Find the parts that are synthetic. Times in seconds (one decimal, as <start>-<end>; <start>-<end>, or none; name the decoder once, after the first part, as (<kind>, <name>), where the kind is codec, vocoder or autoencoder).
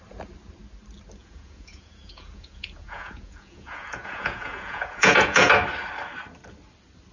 1.2-5.5 (vocoder, Vocos)